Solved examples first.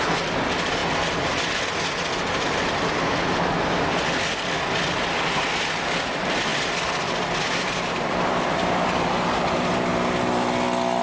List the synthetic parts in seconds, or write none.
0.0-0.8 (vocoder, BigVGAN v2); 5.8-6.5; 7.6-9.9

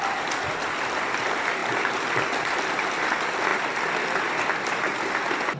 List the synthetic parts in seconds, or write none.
0.0-5.6 (vocoder, BigVGAN v2)

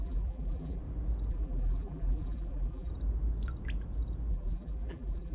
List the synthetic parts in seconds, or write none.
0.0-0.8 (vocoder, BigVGAN v2); 1.3-2.9; 4.3-5.3

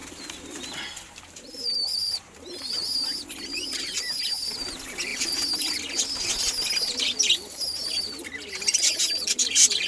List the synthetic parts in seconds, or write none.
0.0-4.0 (vocoder, BigVGAN v2); 5.1-6.3

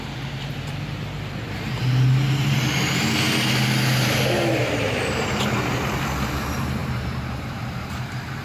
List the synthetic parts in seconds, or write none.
0.0-1.8 (vocoder, BigVGAN v2); 4.6-8.4

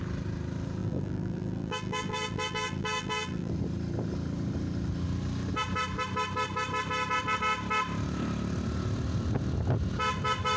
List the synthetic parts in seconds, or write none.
0.8-3.5 (vocoder, BigVGAN v2)

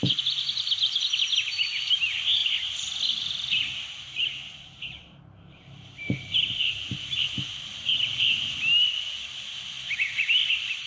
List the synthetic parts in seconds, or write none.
0.0-7.9 (vocoder, BigVGAN v2); 9.0-10.9

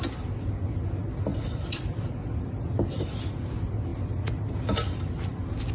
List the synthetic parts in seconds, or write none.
1.3-3.3 (vocoder, BigVGAN v2)